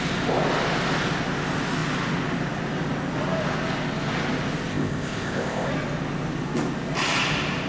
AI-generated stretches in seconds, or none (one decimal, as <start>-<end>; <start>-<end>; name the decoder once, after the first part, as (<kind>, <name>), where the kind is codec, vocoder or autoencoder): 4.7-5.7 (codec, ZipCodec)